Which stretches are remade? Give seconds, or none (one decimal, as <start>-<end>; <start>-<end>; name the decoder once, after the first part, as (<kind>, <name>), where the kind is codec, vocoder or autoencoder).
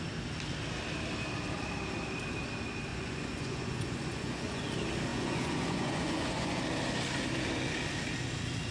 2.9-4.6 (vocoder, Vocos); 5.1-6.6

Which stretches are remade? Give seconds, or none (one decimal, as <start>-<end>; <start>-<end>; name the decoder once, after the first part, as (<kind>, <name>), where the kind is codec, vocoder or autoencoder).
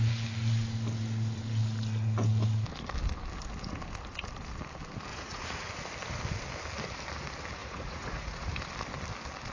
5.1-5.7 (vocoder, Vocos); 7.6-8.5